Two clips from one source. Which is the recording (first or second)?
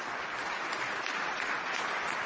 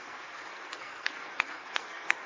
first